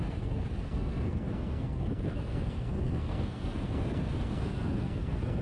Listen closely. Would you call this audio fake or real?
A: fake